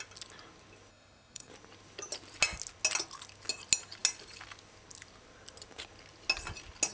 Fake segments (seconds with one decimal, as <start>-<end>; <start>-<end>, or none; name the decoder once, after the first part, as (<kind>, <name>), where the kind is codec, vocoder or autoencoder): 0.9-1.5 (codec, SNAC)